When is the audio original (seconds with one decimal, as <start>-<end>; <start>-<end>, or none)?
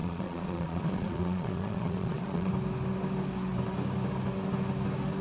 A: 2.5-5.2